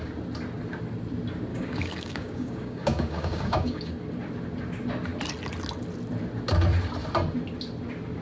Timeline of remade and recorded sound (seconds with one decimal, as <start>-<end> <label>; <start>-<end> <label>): 0.0-1.5 recorded; 1.5-3.9 remade; 3.9-8.2 recorded